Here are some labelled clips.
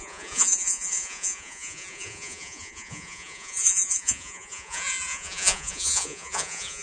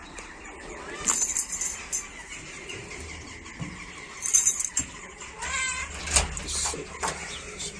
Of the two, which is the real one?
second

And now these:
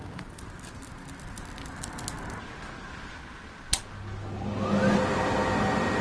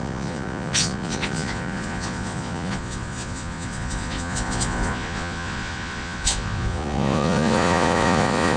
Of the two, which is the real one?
first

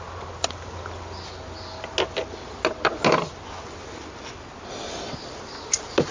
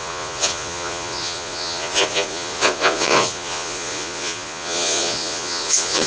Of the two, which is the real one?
first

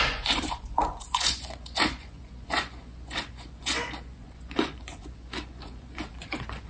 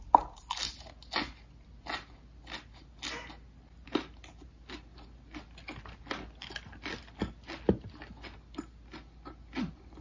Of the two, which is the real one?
second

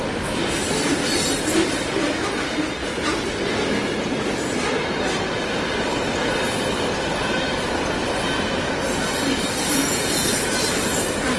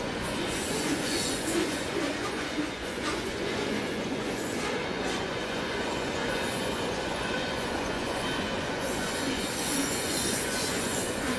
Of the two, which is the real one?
first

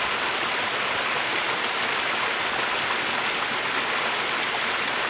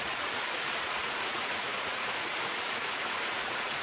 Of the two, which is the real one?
first